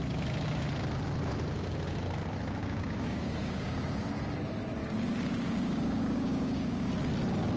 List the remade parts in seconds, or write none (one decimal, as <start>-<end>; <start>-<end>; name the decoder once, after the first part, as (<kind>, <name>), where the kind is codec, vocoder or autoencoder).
2.6-4.0 (codec, DAC); 4.8-6.9